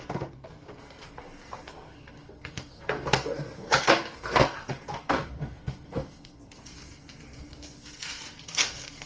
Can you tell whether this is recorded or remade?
remade